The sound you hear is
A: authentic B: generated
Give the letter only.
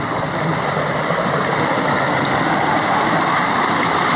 A